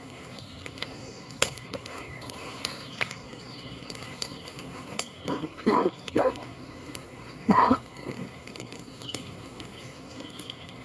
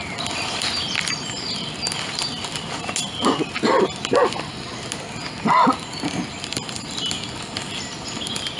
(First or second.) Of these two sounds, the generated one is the first